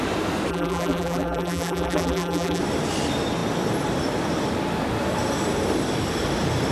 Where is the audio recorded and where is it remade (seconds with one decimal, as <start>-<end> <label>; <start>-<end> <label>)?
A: 0.0-0.5 recorded; 0.5-2.6 remade; 2.6-6.7 recorded